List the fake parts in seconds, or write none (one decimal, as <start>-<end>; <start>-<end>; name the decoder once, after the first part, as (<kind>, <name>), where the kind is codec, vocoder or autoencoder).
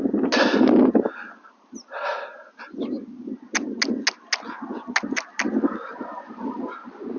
none